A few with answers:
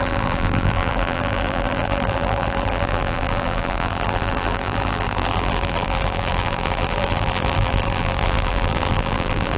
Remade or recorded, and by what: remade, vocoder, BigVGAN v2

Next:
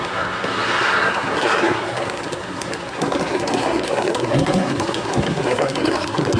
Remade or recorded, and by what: remade, codec, SNAC